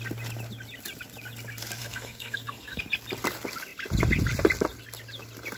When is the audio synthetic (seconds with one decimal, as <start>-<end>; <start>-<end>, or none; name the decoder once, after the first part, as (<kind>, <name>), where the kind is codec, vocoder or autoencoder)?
1.8-2.8 (codec, SNAC)